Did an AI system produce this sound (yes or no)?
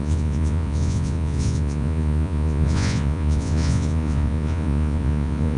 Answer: yes